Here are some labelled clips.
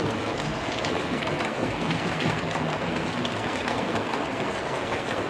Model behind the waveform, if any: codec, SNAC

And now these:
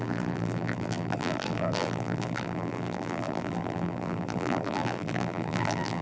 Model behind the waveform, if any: vocoder, BigVGAN v2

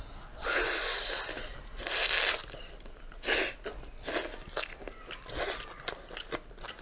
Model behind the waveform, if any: none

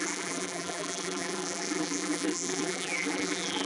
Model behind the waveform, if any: vocoder, BigVGAN v2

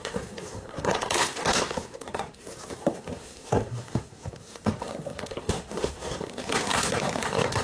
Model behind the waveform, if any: codec, SNAC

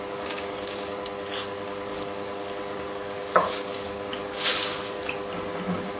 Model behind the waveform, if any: codec, DAC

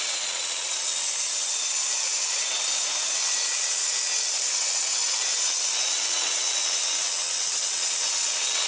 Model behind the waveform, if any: vocoder, WaveNeXt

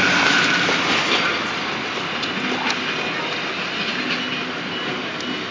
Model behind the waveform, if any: none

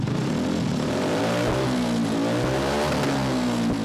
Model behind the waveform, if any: none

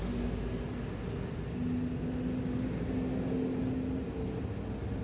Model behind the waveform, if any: none